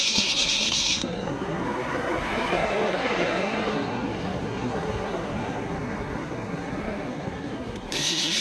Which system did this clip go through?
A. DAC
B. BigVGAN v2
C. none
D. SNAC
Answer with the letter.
D